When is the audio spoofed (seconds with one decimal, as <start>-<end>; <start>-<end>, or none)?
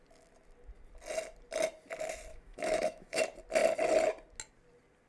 2.3-3.2